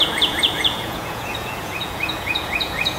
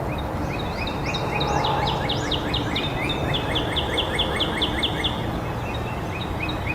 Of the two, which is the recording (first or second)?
second